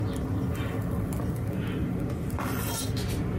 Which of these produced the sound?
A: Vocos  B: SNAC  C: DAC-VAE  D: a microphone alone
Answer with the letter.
D